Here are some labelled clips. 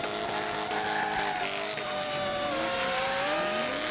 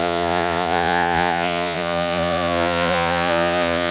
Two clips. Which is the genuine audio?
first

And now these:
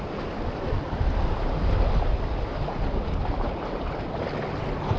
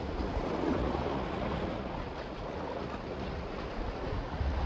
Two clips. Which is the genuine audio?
first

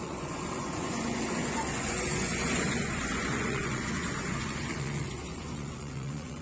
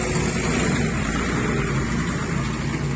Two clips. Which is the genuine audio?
second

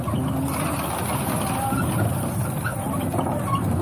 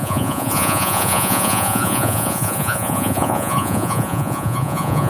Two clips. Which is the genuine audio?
first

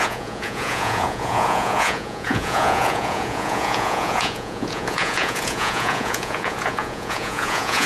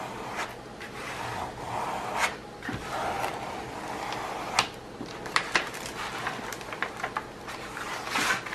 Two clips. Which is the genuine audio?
second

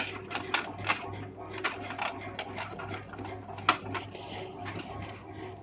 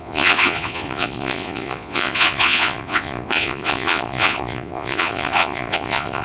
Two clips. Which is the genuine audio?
first